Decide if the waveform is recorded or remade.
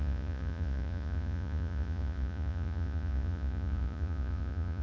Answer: remade